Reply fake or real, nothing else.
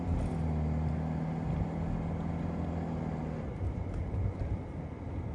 real